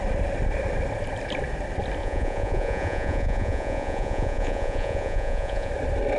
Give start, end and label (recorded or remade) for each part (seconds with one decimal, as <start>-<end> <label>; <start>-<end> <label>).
0.0-2.0 recorded; 2.0-5.7 remade; 5.7-6.2 recorded